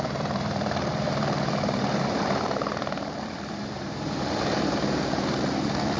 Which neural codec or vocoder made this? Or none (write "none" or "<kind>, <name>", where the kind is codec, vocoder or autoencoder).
vocoder, BigVGAN v2